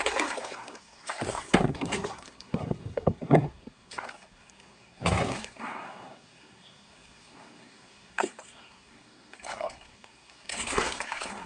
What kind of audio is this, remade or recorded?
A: remade